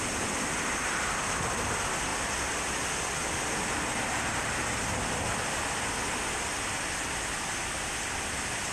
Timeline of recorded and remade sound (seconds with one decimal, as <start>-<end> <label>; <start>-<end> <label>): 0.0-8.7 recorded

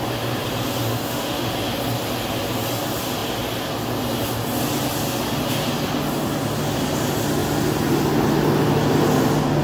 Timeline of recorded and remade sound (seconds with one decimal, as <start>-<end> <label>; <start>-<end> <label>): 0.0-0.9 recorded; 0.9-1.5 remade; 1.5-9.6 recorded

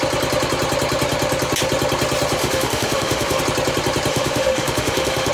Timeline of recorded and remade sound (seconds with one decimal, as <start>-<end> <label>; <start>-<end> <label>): 0.0-2.4 recorded; 2.4-3.4 remade; 3.4-4.1 recorded; 4.1-5.3 remade

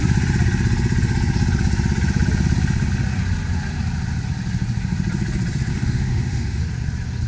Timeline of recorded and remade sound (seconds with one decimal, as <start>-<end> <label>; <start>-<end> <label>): 0.0-5.7 recorded; 5.7-6.6 remade; 6.6-7.3 recorded